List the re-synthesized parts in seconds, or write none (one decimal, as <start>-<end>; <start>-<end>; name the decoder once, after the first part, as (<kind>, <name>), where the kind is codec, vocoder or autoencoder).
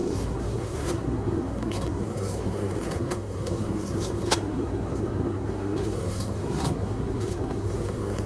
0.0-8.3 (codec, SNAC)